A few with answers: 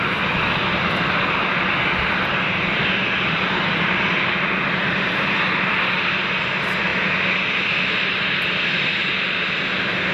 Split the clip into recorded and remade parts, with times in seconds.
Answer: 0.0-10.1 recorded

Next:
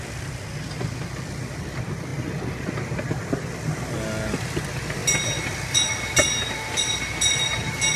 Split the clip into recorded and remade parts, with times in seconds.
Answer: 0.0-8.0 recorded

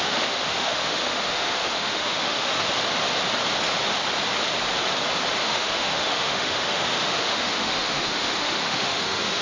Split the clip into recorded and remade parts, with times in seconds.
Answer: 0.0-2.7 remade; 2.7-5.4 recorded; 5.4-9.4 remade

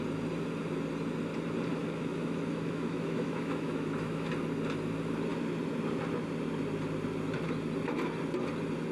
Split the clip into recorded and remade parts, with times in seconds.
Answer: 0.0-1.7 recorded; 1.7-4.3 remade; 4.3-8.9 recorded

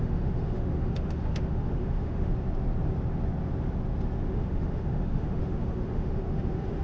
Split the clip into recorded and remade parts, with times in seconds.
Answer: 0.0-2.3 remade; 2.3-4.2 recorded; 4.2-6.8 remade

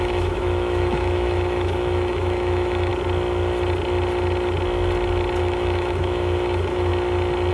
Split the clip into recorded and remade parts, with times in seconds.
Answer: 0.0-2.9 remade; 2.9-5.4 recorded; 5.4-6.9 remade; 6.9-7.5 recorded